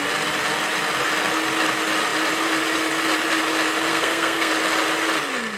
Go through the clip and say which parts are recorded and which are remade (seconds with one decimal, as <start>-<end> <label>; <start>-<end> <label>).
0.0-3.9 recorded; 3.9-4.5 remade; 4.5-5.6 recorded